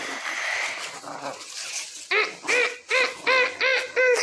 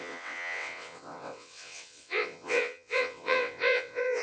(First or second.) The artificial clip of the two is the second